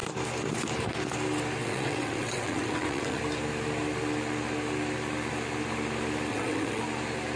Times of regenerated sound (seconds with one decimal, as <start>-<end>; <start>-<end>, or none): 1.6-3.2; 6.3-6.8